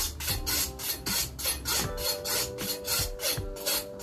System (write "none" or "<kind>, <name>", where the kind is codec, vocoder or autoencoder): none